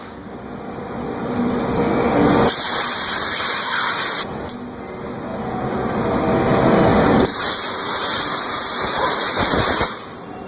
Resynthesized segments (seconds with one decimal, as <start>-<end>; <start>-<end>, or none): 1.2-1.8; 6.9-10.5

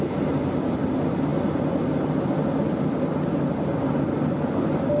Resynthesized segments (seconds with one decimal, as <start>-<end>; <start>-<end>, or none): none

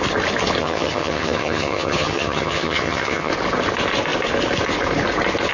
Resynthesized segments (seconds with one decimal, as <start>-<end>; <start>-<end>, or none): 0.6-3.3